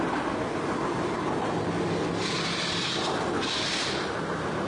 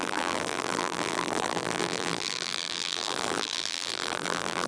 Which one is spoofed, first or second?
second